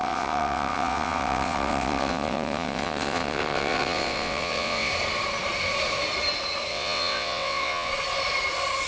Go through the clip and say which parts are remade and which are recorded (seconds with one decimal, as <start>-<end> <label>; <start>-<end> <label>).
0.0-4.9 remade; 4.9-6.7 recorded; 6.7-7.9 remade; 7.9-8.9 recorded